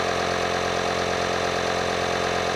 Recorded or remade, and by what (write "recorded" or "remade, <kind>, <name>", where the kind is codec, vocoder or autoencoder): recorded